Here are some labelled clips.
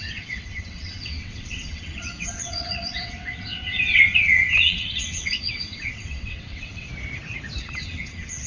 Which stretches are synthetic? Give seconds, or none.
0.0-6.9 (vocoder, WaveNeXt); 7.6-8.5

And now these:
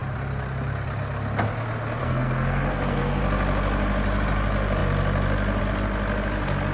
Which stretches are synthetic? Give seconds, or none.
2.0-3.2 (codec, SNAC)

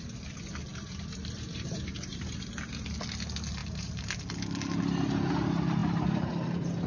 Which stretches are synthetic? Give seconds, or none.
0.7-2.4 (vocoder, BigVGAN v2); 3.6-4.2; 5.8-6.3

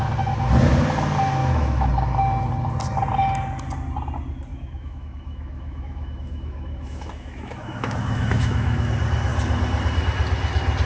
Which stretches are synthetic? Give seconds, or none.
1.4-1.9 (autoencoder, DAC-VAE); 4.5-8.9

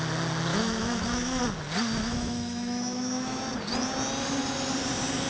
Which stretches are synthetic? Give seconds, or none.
0.5-1.4 (autoencoder, DAC-VAE); 2.0-3.5

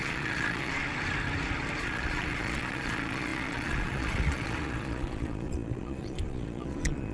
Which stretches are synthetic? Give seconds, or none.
0.0-0.8 (vocoder, Vocos); 1.8-7.1

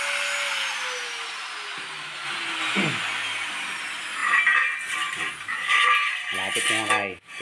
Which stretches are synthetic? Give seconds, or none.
none